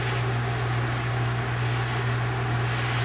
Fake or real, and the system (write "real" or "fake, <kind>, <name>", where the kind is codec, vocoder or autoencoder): real